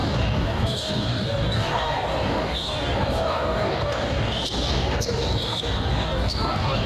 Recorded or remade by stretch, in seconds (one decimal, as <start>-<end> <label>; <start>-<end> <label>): 0.0-6.9 remade